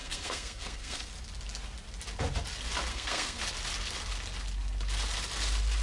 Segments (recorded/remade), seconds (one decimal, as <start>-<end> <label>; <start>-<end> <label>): 0.0-1.1 remade; 1.1-2.9 recorded; 2.9-3.4 remade; 3.4-5.8 recorded